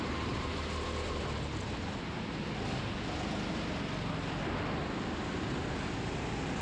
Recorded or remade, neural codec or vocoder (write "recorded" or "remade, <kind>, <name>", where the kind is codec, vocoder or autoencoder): recorded